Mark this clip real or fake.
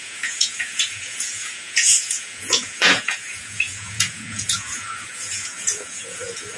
fake